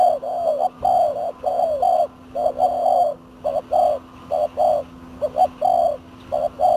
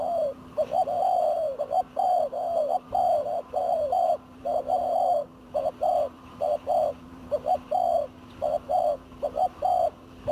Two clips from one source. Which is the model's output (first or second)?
second